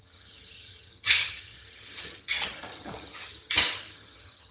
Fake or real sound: fake